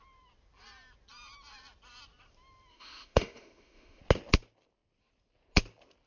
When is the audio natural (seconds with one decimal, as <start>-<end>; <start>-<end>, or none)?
0.0-2.7; 4.0-6.1